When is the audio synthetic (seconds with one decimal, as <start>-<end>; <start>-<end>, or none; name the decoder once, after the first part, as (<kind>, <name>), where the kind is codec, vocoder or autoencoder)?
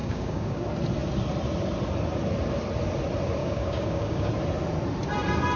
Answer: 0.0-0.6 (codec, DAC); 3.4-4.3